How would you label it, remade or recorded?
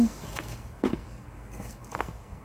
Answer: remade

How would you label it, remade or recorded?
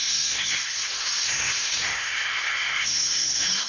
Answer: remade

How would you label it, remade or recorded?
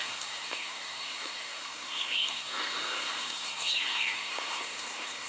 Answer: remade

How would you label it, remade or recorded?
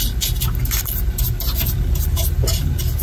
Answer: recorded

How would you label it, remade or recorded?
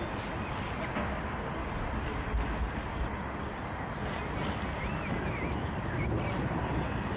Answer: recorded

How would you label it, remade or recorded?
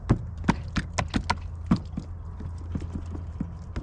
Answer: recorded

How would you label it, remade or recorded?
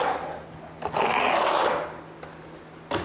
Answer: recorded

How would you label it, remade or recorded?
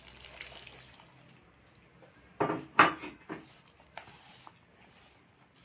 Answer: recorded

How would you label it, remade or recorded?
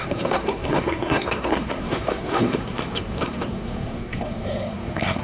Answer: remade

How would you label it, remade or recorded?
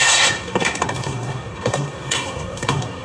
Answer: remade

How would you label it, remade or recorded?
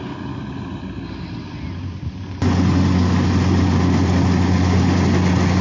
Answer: recorded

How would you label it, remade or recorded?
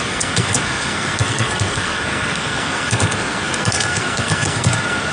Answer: remade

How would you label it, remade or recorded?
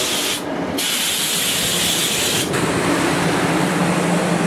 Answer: recorded